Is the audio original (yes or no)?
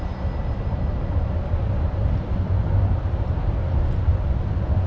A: yes